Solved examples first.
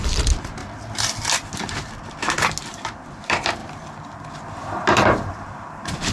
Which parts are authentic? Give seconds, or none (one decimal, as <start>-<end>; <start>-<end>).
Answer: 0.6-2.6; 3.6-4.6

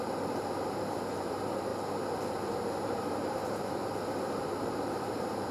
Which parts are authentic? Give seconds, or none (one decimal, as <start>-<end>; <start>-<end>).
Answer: 1.7-2.5; 3.8-4.6

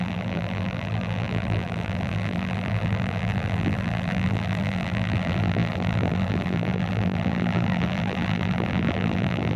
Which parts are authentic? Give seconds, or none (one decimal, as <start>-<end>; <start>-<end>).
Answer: none

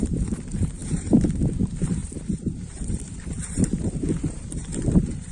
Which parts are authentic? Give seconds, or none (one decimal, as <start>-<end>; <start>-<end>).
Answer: none

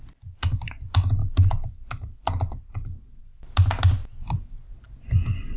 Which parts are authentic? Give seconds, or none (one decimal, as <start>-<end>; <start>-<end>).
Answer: 0.0-1.2; 3.2-4.0; 4.7-5.6

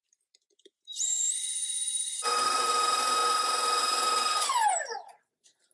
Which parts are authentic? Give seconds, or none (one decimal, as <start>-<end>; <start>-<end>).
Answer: 3.2-3.8

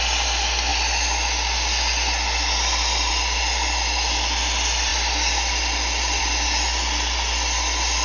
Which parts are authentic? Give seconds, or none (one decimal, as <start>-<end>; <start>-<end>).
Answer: 0.0-8.0